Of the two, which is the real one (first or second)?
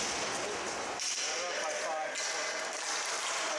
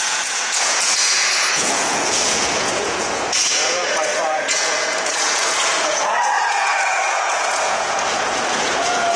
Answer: first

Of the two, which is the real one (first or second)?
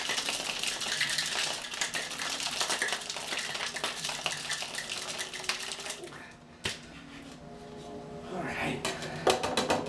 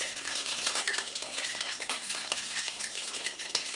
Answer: first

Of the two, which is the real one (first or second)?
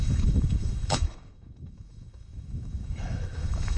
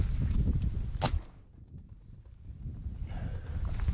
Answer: second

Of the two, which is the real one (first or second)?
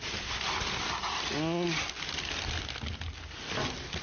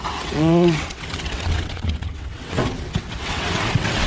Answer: first